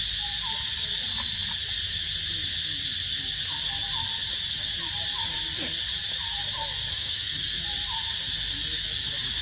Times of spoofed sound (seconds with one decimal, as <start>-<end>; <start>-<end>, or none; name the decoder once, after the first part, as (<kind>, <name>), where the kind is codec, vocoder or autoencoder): 6.9-7.6 (autoencoder, DAC-VAE)